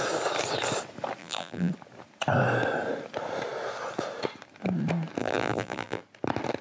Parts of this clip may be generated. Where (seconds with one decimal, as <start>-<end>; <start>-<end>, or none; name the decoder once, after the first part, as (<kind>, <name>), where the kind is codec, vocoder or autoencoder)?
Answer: 1.2-1.7 (vocoder, BigVGAN v2); 5.2-6.0